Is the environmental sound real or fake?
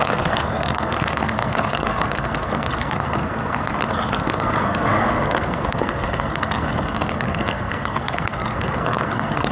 fake